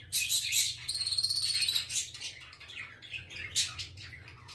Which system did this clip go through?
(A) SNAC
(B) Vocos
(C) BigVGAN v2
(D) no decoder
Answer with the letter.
B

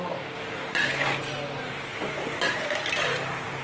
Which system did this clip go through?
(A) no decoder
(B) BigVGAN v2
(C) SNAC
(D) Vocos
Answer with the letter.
A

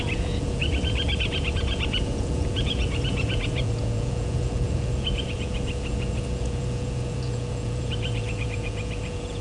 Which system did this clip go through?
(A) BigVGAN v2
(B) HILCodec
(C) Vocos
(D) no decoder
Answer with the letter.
C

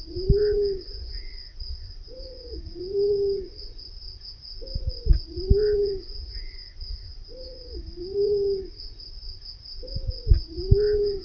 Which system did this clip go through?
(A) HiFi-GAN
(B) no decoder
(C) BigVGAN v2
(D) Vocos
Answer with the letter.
D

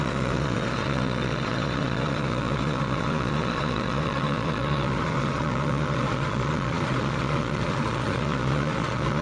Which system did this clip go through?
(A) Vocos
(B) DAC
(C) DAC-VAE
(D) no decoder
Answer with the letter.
A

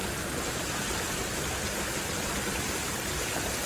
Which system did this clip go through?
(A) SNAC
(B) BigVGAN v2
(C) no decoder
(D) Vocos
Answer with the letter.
C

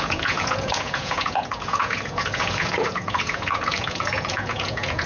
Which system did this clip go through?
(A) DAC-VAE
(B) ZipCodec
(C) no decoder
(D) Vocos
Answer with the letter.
D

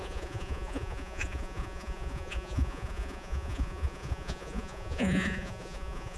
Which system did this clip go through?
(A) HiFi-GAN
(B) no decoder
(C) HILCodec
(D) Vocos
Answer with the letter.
D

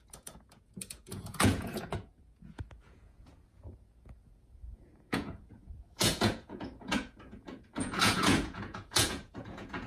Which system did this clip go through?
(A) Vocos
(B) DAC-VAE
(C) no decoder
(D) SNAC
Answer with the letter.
A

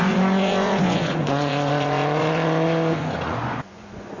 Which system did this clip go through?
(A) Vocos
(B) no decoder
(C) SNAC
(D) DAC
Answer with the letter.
A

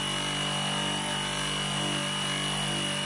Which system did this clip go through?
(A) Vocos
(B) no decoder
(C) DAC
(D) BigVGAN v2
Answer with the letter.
B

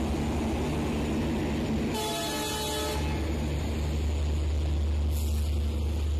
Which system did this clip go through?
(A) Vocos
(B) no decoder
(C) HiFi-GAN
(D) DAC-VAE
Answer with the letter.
B